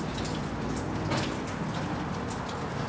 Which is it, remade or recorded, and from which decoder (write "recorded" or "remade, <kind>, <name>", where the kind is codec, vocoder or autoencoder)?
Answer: recorded